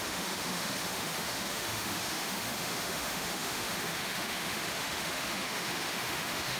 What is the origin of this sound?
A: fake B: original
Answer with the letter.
A